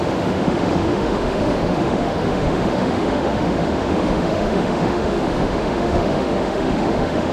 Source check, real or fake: fake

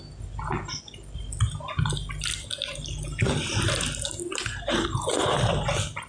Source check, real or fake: real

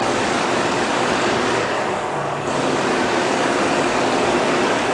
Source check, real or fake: fake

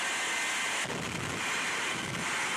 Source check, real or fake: real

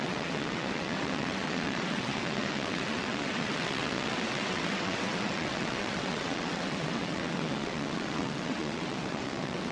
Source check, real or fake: fake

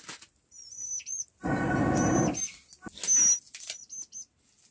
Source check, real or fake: real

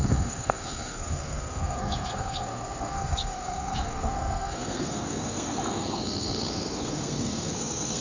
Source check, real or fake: fake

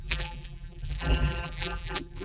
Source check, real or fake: fake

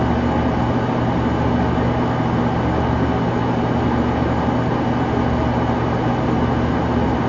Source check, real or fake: real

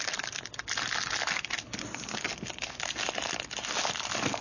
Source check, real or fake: real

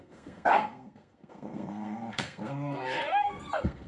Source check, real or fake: fake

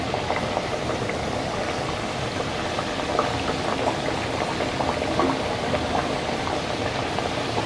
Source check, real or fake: real